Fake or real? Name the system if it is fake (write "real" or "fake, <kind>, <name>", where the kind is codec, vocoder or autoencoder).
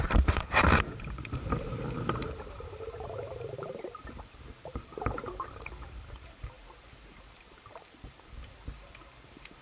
fake, vocoder, BigVGAN v2